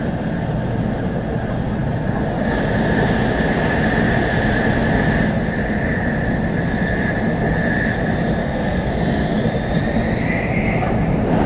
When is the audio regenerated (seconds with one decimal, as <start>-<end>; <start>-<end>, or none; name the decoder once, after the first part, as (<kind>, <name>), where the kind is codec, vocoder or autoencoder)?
8.4-9.4 (codec, SNAC)